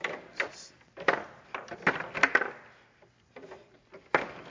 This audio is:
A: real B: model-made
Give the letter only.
A